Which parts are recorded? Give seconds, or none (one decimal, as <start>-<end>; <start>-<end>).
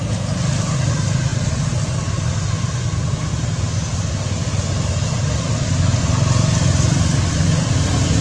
0.0-8.2